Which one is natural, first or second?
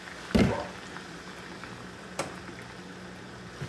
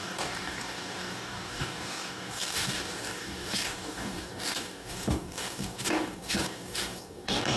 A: first